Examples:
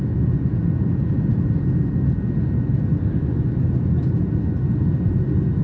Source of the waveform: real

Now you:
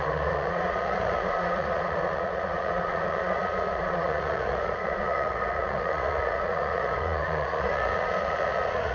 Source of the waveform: fake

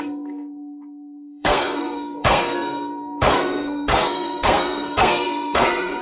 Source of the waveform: fake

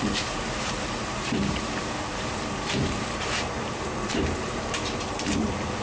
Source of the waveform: fake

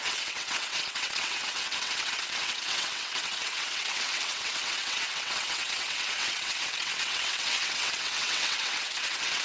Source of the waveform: fake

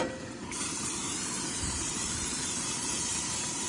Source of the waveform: fake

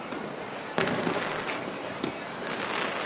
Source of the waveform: real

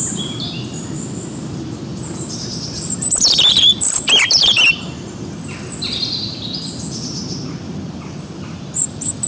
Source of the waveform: fake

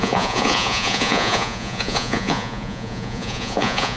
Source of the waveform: fake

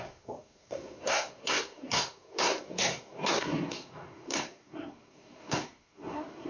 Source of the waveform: fake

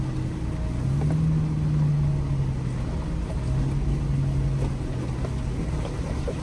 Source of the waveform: real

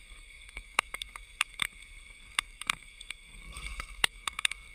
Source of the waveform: fake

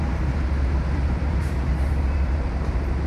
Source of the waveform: fake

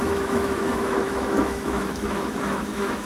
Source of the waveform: fake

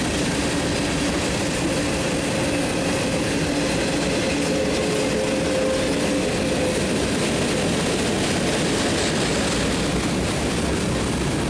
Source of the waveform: real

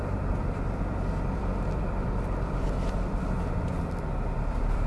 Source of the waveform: fake